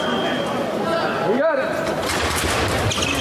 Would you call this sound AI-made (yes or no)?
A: no